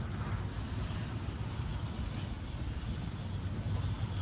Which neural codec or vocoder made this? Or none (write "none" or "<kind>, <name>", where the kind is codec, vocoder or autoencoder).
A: none